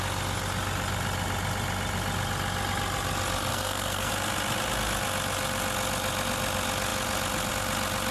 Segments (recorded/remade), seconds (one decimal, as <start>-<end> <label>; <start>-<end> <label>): 0.0-3.5 recorded; 3.5-4.1 remade; 4.1-8.1 recorded